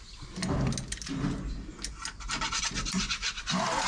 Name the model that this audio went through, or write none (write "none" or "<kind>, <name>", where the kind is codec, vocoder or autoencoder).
none